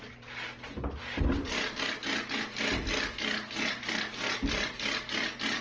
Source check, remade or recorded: recorded